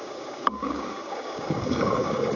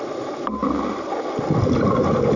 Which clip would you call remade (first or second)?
first